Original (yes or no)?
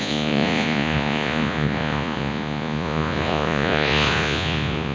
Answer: no